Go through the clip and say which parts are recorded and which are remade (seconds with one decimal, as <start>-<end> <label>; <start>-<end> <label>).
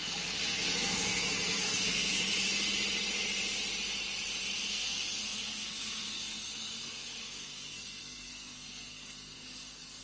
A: 0.0-2.3 remade; 2.3-4.7 recorded; 4.7-10.0 remade